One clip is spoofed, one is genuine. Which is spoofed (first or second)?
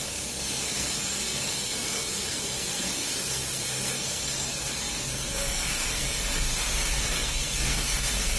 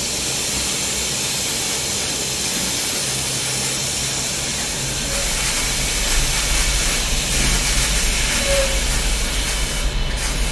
first